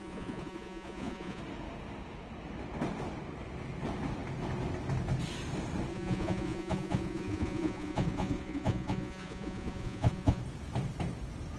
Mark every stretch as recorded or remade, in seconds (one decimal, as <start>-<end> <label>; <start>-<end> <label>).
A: 0.0-1.4 remade; 1.4-5.9 recorded; 5.9-10.4 remade; 10.4-11.6 recorded